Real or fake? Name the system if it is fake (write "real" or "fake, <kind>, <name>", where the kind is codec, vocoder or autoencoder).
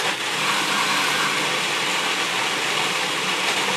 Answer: real